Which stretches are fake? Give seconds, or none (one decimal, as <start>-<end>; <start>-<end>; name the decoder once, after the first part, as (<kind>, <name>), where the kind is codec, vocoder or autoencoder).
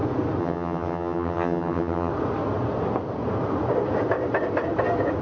0.4-2.1 (vocoder, HiFi-GAN)